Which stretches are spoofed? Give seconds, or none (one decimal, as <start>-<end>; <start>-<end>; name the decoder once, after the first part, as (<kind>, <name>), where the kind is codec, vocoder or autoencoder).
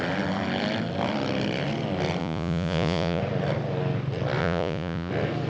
2.2-3.2 (vocoder, Vocos); 4.4-5.1